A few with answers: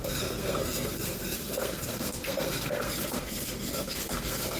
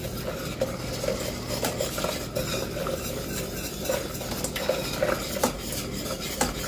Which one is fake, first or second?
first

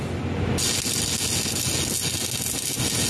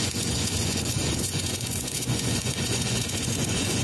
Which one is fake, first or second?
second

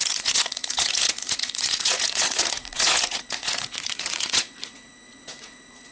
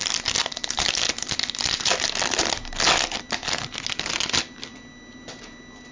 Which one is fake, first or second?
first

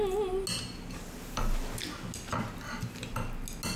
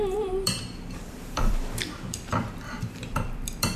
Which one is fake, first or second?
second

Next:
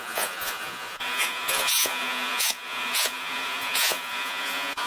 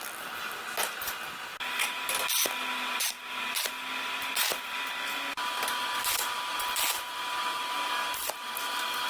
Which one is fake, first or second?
first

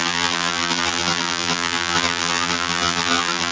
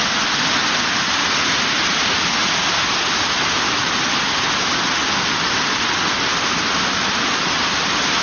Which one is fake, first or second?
first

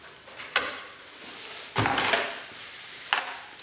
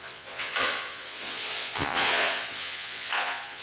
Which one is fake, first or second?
second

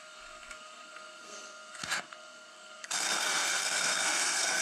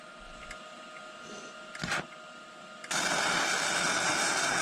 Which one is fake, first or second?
first